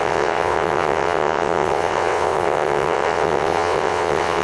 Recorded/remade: remade